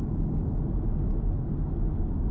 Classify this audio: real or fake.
real